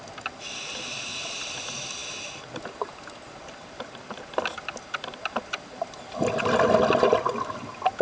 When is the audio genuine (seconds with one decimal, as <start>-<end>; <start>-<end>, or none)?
0.0-8.0